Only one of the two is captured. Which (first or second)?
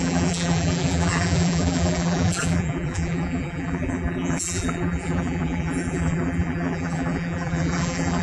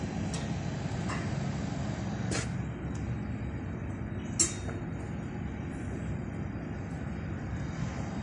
second